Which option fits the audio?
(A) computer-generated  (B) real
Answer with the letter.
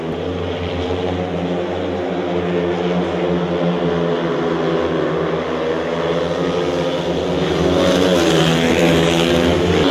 B